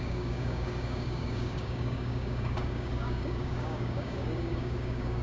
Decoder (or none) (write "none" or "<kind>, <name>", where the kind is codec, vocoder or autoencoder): codec, DAC